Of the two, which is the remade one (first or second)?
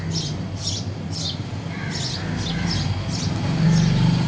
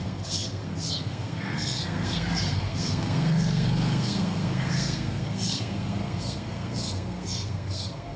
second